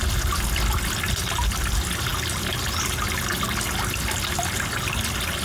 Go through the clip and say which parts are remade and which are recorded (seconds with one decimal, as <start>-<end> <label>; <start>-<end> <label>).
0.0-5.4 recorded